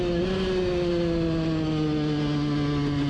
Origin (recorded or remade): recorded